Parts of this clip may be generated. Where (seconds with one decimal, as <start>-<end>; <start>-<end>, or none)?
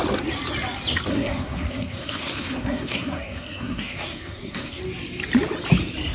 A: 1.1-4.8